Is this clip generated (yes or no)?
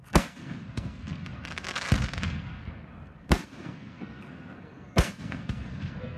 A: yes